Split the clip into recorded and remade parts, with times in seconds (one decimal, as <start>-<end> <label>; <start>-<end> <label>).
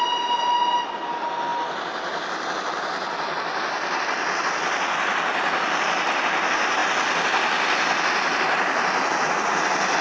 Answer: 0.0-10.0 recorded